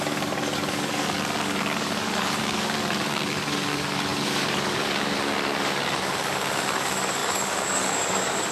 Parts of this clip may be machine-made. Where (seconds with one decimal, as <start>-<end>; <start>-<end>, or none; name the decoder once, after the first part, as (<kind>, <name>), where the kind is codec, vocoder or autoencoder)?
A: 0.0-8.5 (codec, DAC)